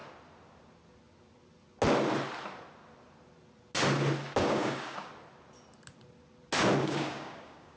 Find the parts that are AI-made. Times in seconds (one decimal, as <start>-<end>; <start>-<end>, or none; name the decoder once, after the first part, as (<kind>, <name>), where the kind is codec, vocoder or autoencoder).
4.4-5.1 (codec, DAC); 6.8-7.8